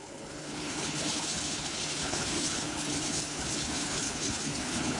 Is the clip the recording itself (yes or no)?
no